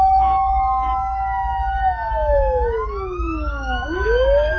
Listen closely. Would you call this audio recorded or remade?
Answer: remade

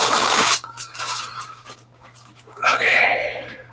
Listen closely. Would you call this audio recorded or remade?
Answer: remade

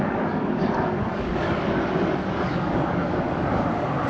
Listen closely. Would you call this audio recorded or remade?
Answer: remade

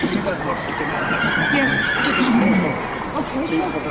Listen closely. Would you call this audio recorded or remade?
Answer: recorded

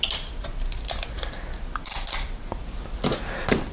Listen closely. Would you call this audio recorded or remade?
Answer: recorded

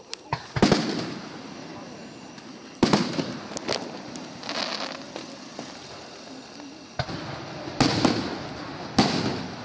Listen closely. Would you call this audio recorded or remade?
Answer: recorded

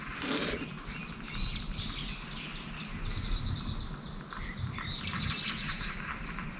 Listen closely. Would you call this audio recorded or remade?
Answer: recorded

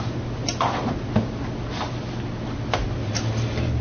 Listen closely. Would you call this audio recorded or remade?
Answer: recorded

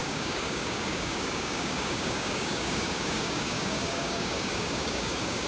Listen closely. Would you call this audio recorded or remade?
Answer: remade